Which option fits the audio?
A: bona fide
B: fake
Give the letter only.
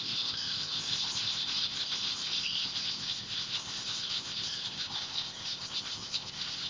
B